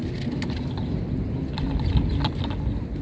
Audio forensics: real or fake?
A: real